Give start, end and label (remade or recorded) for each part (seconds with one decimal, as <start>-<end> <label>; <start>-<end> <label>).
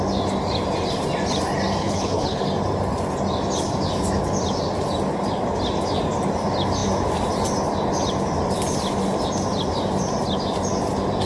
0.0-1.8 recorded; 1.8-2.4 remade; 2.4-11.3 recorded